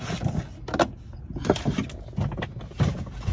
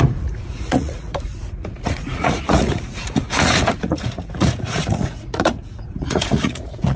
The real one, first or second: first